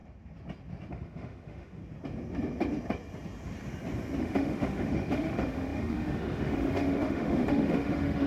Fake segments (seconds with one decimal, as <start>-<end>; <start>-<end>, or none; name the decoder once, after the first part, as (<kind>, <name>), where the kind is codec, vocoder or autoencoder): 0.9-1.8 (autoencoder, DAC-VAE); 4.2-8.3